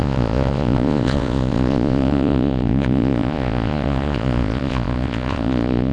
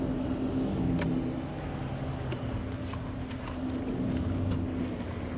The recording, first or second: second